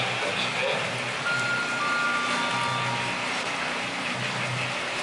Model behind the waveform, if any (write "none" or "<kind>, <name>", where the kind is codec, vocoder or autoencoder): none